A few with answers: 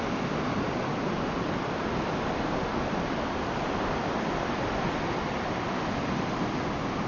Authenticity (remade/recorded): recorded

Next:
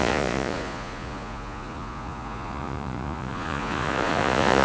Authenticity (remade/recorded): remade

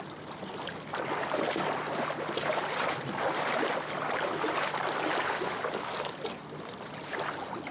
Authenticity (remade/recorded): recorded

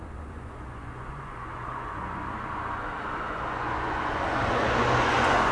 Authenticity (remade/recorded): remade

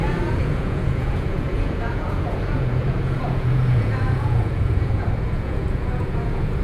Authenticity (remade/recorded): remade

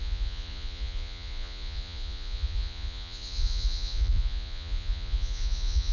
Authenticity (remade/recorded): remade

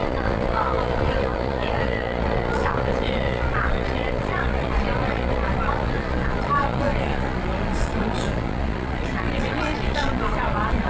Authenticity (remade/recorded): remade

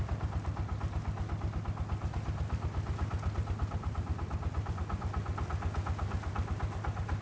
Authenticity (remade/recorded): recorded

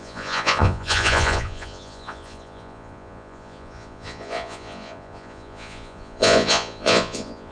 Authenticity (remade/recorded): remade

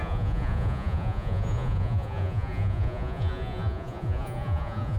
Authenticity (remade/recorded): remade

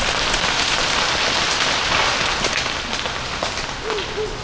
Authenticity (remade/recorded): recorded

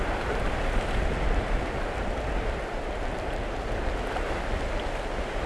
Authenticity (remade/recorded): recorded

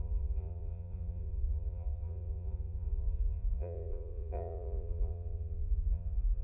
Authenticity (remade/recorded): remade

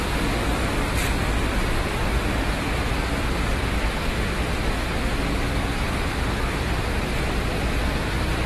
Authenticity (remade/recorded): recorded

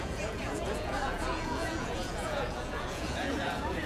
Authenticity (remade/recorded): remade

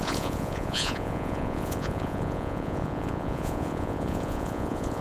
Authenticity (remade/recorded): remade